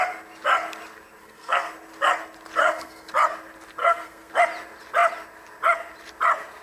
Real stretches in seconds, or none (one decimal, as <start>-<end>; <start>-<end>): 0.0-1.2; 1.7-2.6; 3.1-3.8; 4.3-6.6